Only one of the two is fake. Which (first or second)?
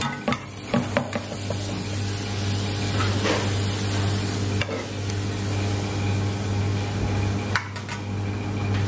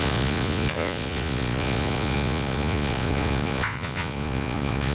second